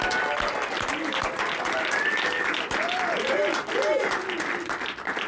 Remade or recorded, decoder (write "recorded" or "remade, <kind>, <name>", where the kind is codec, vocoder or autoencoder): recorded